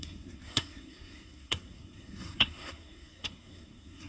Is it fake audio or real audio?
fake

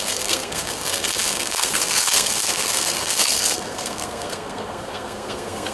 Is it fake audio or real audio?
fake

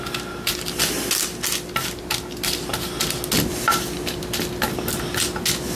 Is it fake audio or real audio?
real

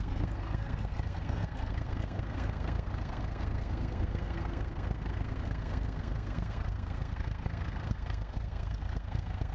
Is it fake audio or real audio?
fake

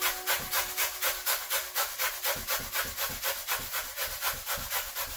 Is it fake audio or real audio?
real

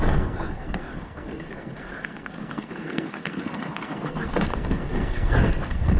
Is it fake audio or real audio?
fake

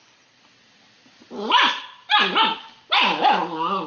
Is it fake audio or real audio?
real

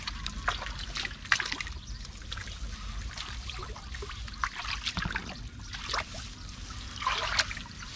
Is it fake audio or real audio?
real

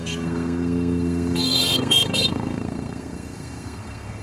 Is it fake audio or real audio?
fake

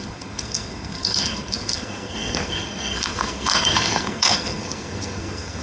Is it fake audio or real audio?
fake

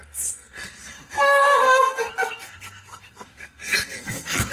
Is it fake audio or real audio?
fake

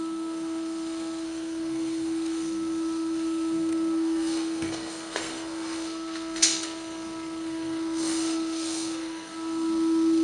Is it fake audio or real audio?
fake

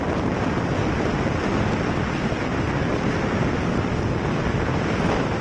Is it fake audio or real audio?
real